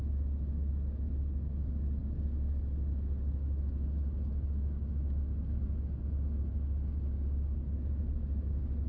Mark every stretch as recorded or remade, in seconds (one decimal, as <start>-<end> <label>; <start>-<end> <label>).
0.0-8.9 recorded